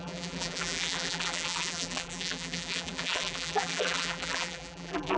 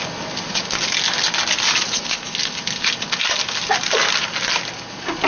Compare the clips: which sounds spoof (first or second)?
first